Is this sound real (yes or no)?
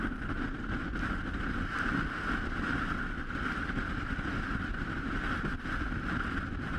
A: yes